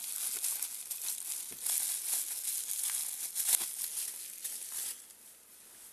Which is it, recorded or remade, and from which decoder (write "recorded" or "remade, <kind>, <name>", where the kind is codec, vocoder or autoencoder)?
recorded